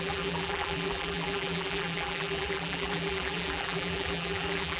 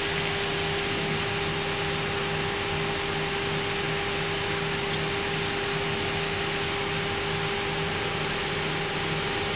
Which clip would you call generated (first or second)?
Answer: first